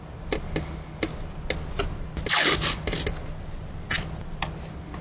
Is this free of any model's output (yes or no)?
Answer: yes